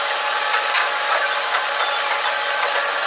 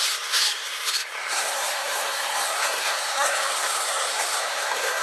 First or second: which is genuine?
first